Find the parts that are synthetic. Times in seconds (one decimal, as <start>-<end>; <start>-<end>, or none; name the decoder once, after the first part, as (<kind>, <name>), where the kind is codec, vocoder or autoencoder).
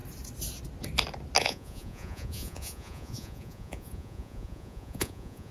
1.4-5.5 (vocoder, Vocos)